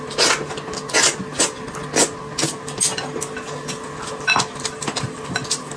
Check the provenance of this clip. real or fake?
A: real